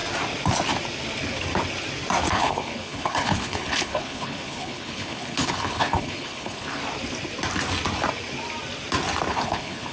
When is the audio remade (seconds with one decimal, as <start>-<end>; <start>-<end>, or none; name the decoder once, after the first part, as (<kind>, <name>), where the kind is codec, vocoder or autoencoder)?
2.3-6.8 (codec, HILCodec); 9.3-9.9